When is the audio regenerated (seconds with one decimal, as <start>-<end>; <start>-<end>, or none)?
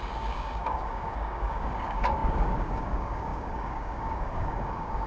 0.0-5.1